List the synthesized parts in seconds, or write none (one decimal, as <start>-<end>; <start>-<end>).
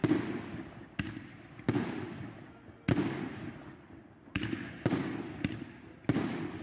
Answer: 3.3-5.0